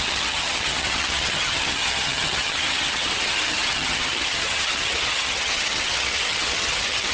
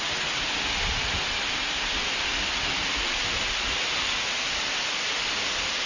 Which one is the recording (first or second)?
second